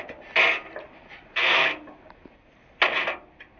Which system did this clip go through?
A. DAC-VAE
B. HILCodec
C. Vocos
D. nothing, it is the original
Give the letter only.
D